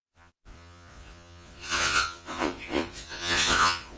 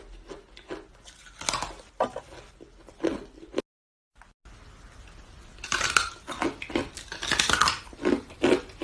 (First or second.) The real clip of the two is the second